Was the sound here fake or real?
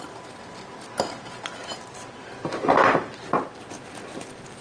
real